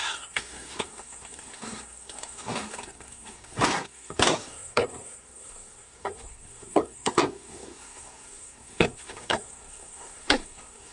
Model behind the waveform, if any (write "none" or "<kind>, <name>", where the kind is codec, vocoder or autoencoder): codec, SNAC